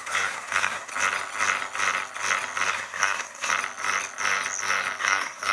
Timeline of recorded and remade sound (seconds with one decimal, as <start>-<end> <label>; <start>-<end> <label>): 0.0-0.9 remade; 0.9-2.7 recorded; 2.7-3.5 remade; 3.5-5.0 recorded; 5.0-5.5 remade